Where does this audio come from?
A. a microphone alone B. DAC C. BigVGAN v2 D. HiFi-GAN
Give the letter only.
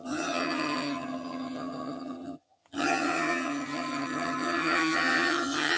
D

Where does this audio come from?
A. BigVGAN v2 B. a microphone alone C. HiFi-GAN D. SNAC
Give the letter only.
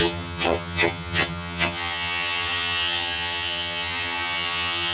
C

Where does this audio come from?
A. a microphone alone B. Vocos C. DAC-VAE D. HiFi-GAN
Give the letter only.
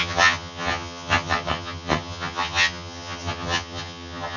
D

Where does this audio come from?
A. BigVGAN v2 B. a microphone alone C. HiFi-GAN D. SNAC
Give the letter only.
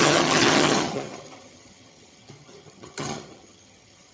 C